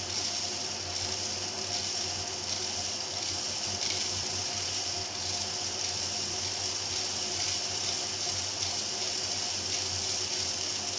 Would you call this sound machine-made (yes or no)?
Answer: no